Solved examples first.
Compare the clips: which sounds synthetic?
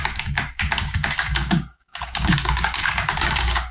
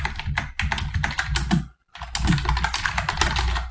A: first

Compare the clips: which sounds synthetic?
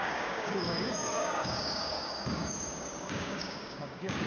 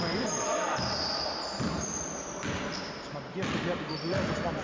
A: first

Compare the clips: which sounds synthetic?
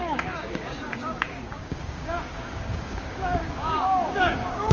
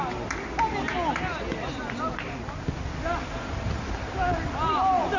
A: first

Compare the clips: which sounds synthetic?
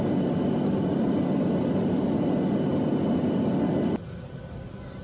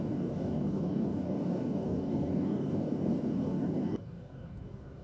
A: second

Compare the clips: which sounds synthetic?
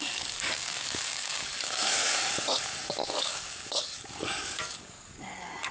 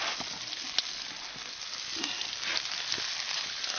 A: first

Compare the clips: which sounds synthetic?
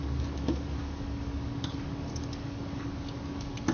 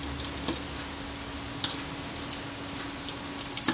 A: first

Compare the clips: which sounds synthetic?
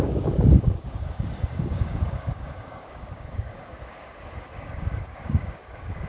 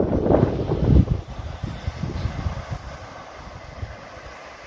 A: first